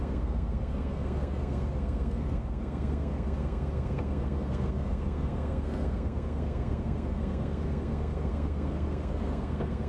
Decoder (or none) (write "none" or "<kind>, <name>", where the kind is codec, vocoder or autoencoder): codec, SNAC